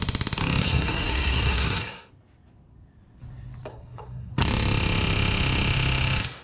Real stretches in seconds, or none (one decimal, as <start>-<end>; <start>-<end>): 0.0-0.6; 2.1-3.7; 4.3-6.4